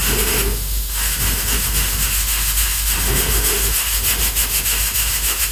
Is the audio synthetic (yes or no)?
yes